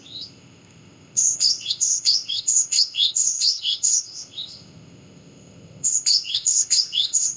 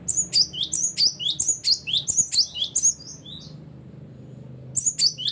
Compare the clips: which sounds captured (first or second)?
second